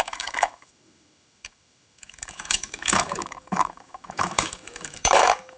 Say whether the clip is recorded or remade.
remade